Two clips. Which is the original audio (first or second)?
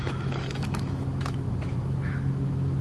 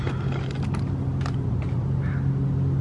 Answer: second